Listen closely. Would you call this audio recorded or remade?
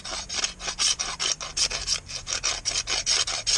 recorded